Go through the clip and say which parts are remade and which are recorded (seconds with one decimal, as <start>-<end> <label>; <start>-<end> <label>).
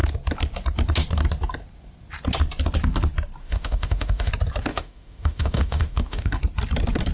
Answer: 0.0-3.4 recorded; 3.4-4.3 remade; 4.3-4.7 recorded; 4.7-6.3 remade; 6.3-7.1 recorded